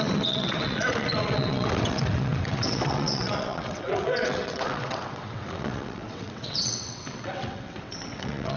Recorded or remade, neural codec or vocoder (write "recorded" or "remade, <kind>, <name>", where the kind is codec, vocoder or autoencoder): remade, vocoder, WaveNeXt